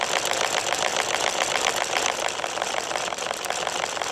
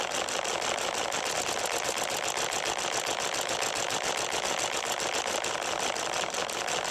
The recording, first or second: second